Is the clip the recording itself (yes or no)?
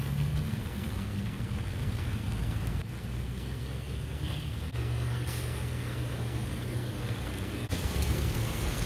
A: no